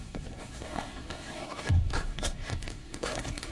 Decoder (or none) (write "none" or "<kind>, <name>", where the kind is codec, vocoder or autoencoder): codec, SNAC